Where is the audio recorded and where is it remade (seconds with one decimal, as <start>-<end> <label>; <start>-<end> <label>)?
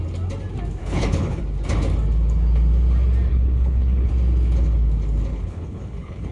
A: 0.0-0.8 recorded; 0.8-1.4 remade; 1.4-3.3 recorded; 3.3-4.1 remade; 4.1-5.3 recorded; 5.3-6.3 remade